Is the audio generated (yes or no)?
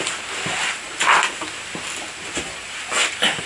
no